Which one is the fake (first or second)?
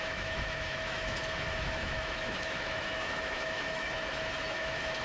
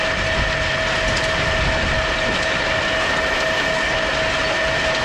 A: first